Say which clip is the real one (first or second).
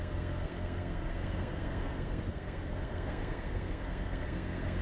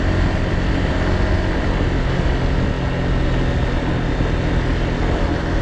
second